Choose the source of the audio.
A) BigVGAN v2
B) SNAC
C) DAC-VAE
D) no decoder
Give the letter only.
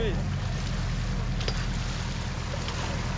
D